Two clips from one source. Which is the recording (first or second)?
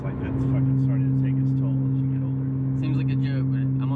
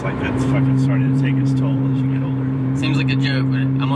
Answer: first